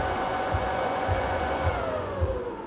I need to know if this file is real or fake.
fake